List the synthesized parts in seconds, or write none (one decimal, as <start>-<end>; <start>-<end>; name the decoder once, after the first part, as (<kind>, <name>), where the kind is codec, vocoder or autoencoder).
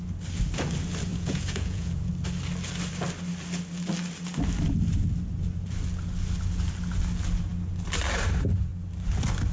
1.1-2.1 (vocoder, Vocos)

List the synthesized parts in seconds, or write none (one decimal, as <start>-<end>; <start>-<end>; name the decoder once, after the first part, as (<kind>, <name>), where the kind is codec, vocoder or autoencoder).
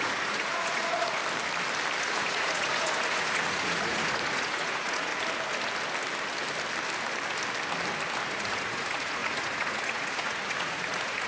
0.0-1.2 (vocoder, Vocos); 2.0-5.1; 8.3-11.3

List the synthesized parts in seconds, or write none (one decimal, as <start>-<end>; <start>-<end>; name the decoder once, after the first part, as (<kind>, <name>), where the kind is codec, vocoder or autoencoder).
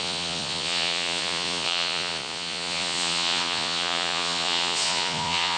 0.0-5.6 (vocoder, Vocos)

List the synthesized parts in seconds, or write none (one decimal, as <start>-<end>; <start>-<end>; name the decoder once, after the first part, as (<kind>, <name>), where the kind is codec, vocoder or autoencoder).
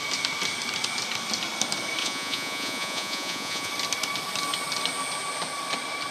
2.0-3.7 (vocoder, Vocos)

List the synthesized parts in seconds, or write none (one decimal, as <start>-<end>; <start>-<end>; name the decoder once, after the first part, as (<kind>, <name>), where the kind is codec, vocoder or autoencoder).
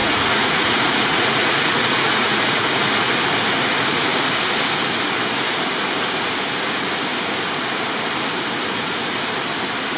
0.0-3.1 (vocoder, Vocos)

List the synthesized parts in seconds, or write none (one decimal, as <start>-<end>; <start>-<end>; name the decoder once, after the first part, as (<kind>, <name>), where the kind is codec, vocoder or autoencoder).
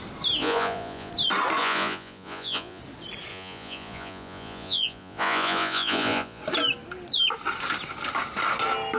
0.4-1.1 (vocoder, Vocos); 1.6-2.8; 3.3-6.4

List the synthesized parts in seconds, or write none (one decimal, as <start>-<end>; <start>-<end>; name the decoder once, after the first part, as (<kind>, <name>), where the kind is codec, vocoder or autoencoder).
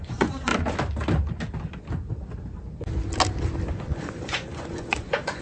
0.0-0.5 (vocoder, Vocos); 3.7-5.4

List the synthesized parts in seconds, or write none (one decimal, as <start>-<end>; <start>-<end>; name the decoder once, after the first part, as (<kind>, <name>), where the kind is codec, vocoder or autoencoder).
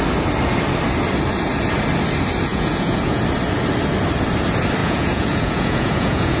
2.5-3.2 (vocoder, Vocos); 4.8-6.4